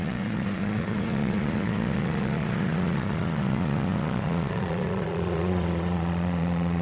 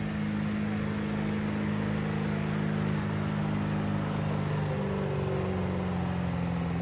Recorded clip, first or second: second